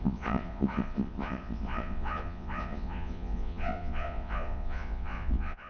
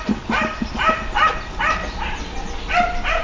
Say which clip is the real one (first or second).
second